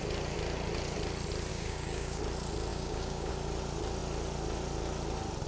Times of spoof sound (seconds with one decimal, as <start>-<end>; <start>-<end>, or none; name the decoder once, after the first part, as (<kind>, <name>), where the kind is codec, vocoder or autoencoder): 1.5-2.2 (codec, DAC); 2.7-3.3